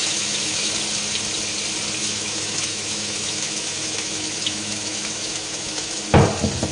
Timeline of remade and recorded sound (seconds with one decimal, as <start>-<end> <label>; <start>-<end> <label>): 0.0-0.7 remade; 0.7-2.0 recorded; 2.0-6.0 remade; 6.0-6.7 recorded

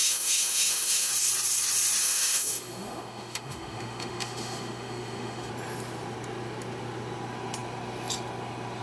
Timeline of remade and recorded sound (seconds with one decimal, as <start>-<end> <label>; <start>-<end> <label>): 0.0-1.1 remade; 1.1-2.0 recorded; 2.0-5.5 remade; 5.5-8.8 recorded

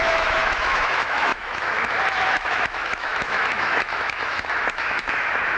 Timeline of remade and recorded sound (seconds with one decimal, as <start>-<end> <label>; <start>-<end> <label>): 0.0-5.6 remade

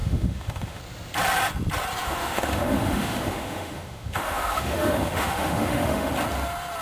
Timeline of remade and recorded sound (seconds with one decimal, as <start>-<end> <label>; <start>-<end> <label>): 0.0-0.8 remade; 0.8-2.0 recorded; 2.0-6.1 remade; 6.1-6.8 recorded

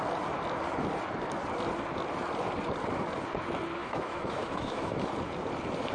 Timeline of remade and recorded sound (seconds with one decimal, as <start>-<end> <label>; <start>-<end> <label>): 0.0-3.8 recorded; 3.8-5.1 remade; 5.1-5.9 recorded

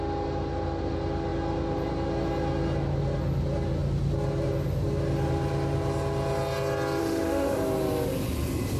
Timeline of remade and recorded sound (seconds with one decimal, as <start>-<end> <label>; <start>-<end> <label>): 0.0-7.0 recorded; 7.0-7.6 remade; 7.6-8.8 recorded

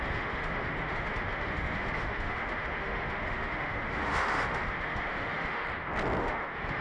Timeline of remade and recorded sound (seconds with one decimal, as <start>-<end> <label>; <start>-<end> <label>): 0.0-5.6 remade; 5.6-6.2 recorded; 6.2-6.8 remade